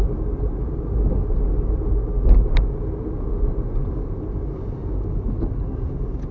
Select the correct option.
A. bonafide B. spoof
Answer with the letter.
A